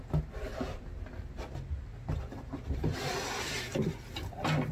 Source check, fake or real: real